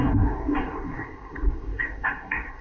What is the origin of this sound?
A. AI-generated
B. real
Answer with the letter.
A